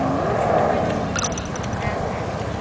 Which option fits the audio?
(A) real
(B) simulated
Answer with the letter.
A